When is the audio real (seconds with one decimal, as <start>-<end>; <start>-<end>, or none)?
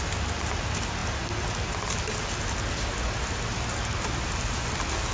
0.0-5.1